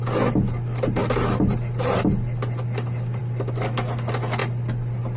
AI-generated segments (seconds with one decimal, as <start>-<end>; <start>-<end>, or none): none